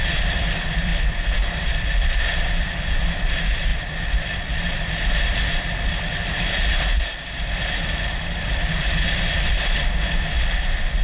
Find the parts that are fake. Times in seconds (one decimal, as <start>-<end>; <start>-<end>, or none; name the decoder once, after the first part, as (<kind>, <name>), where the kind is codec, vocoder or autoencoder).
0.0-0.9 (vocoder, BigVGAN v2); 1.5-3.7; 4.4-11.0